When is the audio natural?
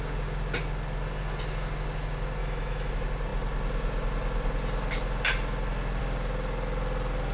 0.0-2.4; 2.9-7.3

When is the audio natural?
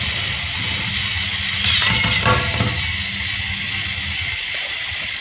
0.0-5.2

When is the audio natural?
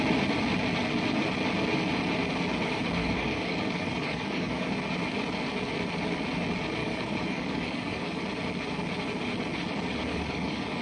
0.0-3.0; 4.7-6.8; 8.2-10.1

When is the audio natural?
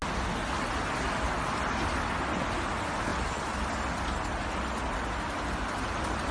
0.0-6.3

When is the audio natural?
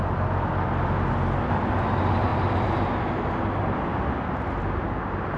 0.0-5.4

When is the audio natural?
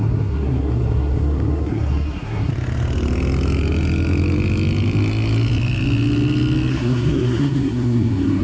2.5-6.7